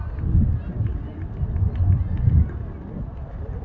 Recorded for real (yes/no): yes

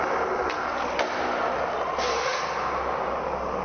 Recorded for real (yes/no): yes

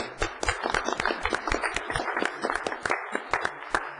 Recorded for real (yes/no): yes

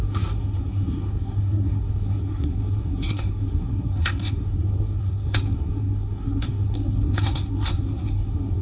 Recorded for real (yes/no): no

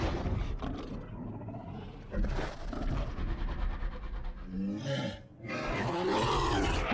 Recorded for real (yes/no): yes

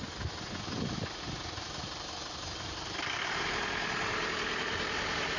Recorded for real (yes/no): no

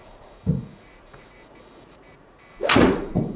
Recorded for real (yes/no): no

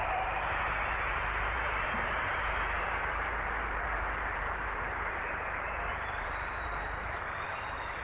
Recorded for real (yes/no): no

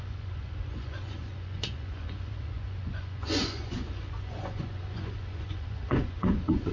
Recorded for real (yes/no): no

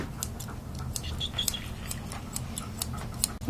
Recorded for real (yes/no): yes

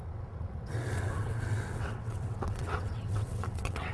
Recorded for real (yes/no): no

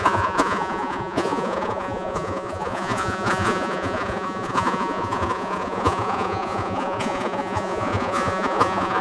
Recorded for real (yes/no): no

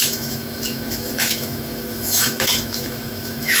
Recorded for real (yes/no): no